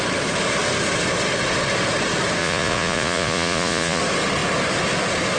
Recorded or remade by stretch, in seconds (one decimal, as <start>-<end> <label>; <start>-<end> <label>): 0.0-2.4 recorded; 2.4-4.0 remade; 4.0-5.4 recorded